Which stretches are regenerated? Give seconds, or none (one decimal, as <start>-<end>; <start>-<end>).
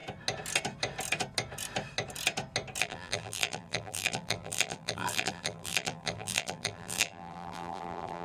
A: 2.8-8.2